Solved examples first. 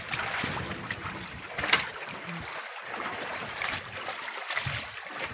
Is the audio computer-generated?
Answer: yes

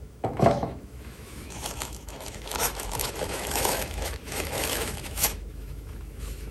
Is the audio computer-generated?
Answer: yes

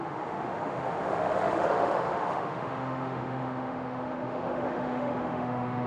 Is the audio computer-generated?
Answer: yes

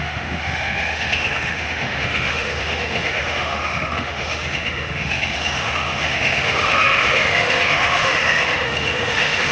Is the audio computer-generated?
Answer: yes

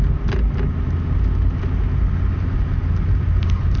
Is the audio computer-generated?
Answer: no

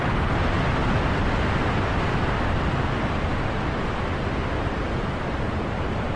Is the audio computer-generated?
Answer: no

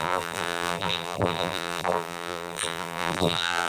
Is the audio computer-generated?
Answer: yes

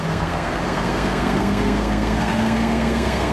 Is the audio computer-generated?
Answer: yes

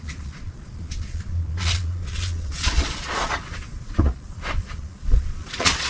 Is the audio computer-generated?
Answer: yes